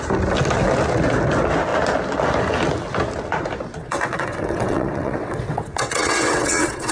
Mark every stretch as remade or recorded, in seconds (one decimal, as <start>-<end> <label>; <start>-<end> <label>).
0.0-3.8 recorded; 3.8-6.9 remade